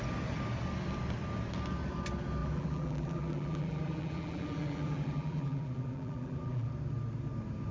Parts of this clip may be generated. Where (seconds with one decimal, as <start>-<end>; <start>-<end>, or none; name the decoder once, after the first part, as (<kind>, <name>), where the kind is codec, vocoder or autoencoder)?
2.4-6.7 (vocoder, BigVGAN v2)

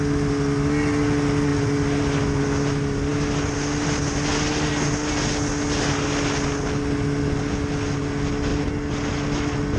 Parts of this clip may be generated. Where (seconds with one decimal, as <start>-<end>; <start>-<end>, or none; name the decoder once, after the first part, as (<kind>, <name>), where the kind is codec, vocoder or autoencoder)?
none

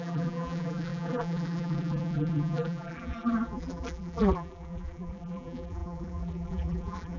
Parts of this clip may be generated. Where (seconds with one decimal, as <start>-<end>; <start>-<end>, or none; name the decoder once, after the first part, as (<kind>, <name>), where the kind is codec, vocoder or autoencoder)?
0.0-7.2 (vocoder, BigVGAN v2)

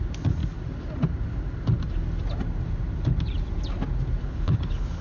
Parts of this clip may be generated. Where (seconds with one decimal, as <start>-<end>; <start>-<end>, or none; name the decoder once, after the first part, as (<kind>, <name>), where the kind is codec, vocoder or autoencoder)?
4.2-5.0 (codec, HILCodec)

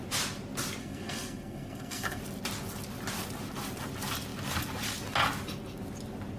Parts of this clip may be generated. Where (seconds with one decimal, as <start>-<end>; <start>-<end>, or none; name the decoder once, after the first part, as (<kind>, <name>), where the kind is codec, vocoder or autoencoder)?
0.8-2.2 (codec, SNAC)

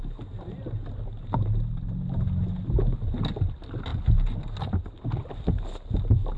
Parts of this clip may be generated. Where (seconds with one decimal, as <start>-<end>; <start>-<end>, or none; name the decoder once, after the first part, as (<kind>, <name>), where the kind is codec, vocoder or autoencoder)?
none

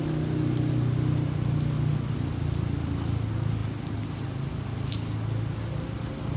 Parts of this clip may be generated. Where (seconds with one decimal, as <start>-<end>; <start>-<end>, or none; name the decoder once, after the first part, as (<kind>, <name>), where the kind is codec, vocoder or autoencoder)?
none

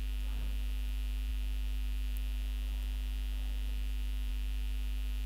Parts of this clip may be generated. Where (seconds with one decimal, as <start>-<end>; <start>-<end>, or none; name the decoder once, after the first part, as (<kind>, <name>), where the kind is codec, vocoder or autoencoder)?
none